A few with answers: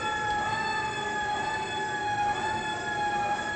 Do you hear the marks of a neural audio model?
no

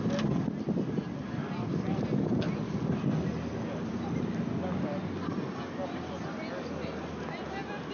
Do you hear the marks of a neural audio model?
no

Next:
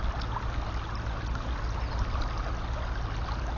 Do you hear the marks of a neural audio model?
no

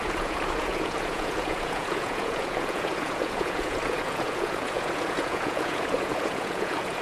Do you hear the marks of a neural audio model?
yes